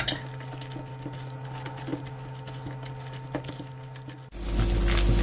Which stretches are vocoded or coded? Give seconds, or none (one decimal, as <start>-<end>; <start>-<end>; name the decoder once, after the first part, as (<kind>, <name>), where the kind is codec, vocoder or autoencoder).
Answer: none

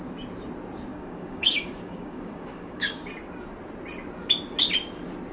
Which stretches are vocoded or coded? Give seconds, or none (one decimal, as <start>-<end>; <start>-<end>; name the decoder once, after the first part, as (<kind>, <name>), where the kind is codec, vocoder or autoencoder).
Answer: 0.9-3.1 (codec, DAC)

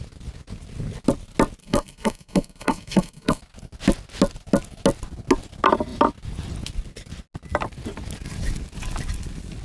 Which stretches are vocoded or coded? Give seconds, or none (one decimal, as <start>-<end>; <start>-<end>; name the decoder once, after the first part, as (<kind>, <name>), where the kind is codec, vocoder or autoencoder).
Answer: 1.6-3.4 (codec, SNAC)

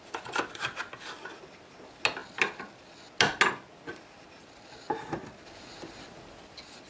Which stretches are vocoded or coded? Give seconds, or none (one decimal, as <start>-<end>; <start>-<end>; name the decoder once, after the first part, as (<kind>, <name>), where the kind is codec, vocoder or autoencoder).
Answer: none

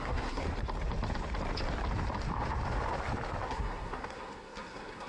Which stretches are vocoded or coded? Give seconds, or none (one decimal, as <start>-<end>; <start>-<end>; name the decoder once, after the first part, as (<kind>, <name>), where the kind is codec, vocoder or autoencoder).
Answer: 0.0-0.4 (codec, SNAC); 3.5-5.1